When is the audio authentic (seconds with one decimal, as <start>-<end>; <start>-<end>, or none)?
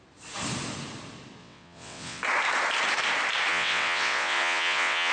0.0-1.4; 2.2-3.5